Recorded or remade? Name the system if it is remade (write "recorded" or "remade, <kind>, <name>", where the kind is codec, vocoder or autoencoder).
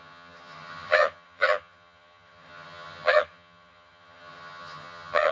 remade, vocoder, HiFi-GAN